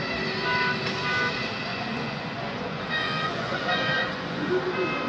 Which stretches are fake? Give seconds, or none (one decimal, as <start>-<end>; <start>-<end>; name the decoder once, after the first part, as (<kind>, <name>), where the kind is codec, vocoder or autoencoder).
1.7-4.5 (vocoder, Vocos)